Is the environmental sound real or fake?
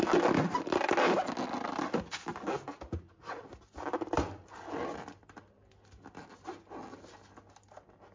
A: real